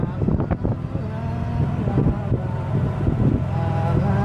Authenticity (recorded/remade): recorded